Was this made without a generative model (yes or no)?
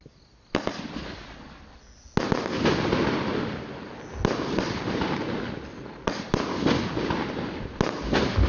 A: yes